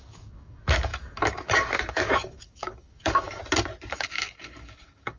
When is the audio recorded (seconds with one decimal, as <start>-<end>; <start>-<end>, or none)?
3.4-3.9